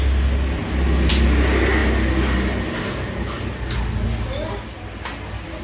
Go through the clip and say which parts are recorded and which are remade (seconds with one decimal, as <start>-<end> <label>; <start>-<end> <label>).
0.0-5.6 recorded